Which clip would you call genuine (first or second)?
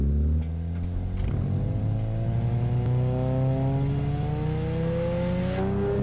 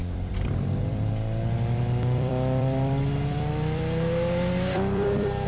first